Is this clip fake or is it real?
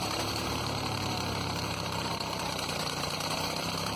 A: fake